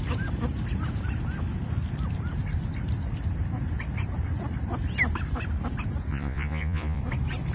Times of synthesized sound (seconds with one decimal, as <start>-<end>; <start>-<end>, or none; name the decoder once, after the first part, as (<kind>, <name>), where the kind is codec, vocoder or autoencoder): 6.1-7.0 (vocoder, Vocos)